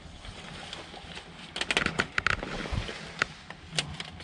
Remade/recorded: recorded